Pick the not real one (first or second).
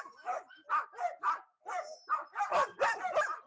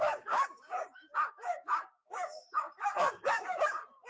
second